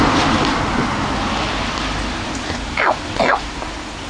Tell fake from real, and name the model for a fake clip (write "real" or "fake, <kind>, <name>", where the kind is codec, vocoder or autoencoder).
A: real